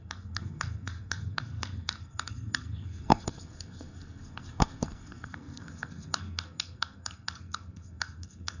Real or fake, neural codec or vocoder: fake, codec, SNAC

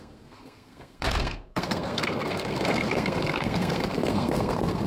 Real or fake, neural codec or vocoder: fake, codec, SNAC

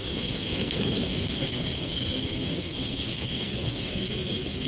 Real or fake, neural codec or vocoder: fake, codec, SNAC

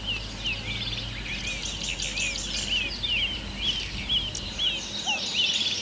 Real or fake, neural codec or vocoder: real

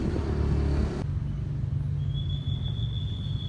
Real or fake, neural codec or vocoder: real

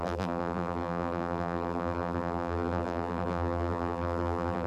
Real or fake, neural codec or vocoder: fake, vocoder, BigVGAN v2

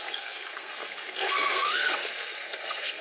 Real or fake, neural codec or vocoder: fake, codec, SNAC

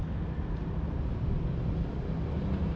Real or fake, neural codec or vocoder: real